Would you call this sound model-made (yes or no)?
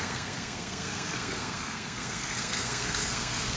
yes